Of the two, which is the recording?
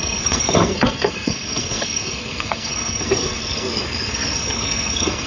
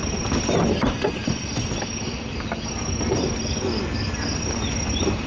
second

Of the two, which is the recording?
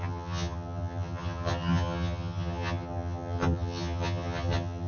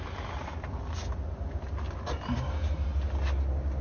second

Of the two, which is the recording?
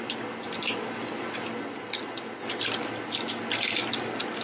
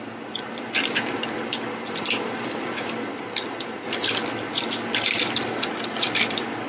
first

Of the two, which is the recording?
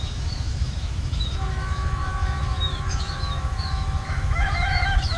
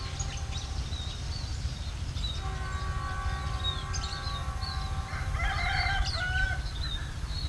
second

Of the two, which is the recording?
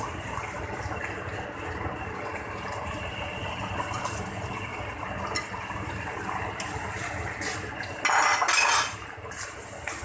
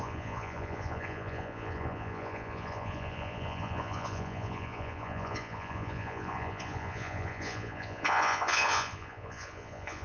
first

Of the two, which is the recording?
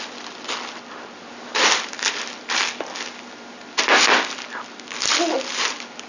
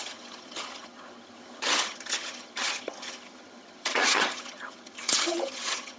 first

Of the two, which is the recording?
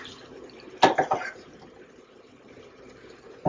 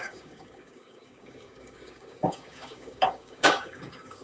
first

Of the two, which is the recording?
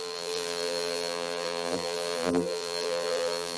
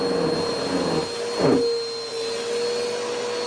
second